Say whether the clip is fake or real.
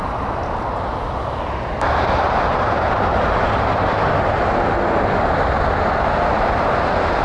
real